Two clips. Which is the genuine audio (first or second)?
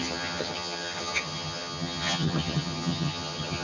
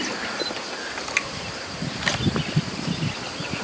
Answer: second